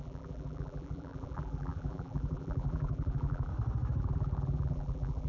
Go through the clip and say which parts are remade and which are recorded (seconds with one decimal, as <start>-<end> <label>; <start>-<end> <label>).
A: 0.0-3.5 remade; 3.5-4.0 recorded; 4.0-5.3 remade